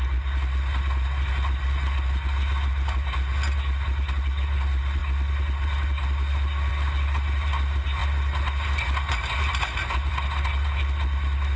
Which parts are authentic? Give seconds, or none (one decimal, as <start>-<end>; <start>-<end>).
0.0-11.6

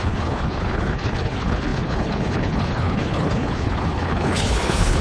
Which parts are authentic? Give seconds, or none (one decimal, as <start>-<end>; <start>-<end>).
none

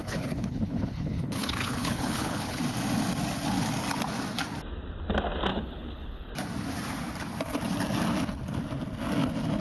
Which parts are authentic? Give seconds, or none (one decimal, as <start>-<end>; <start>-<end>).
2.6-5.5; 6.3-9.6

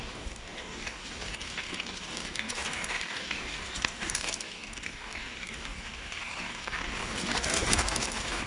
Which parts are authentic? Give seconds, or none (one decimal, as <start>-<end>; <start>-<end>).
none

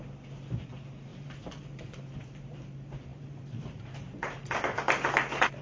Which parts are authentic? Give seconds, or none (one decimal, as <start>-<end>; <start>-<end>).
0.0-1.1; 2.6-3.1; 4.8-5.6

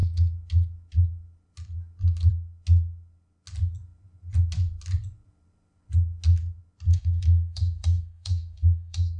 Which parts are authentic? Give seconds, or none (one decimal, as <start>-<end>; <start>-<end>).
0.0-6.9

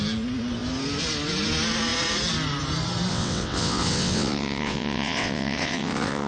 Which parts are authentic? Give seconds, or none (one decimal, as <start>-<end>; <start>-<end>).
0.0-3.1